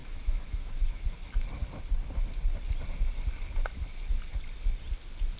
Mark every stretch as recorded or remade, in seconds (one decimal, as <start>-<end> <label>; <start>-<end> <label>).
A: 0.0-1.0 remade; 1.0-5.4 recorded